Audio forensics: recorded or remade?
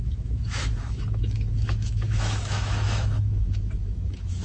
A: remade